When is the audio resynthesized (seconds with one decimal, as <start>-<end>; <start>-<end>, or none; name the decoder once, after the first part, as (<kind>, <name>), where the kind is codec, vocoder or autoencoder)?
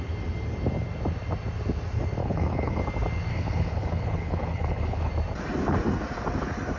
2.2-2.8 (codec, HILCodec); 3.3-5.1